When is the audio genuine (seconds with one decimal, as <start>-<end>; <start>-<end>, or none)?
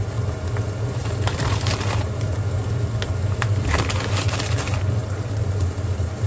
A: 0.0-1.0; 2.6-3.2; 4.3-5.0